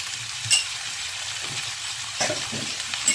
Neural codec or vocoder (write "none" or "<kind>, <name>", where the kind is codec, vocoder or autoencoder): none